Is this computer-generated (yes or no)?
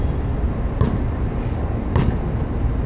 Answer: no